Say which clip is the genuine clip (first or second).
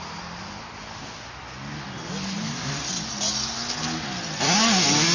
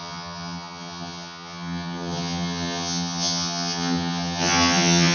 first